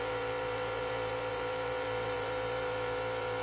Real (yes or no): no